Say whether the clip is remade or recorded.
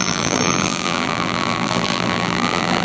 remade